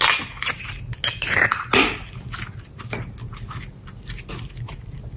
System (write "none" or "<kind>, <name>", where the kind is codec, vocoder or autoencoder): none